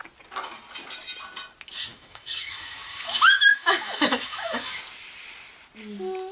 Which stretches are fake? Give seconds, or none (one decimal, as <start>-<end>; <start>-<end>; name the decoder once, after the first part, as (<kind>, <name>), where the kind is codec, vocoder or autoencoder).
1.8-4.8 (autoencoder, DAC-VAE)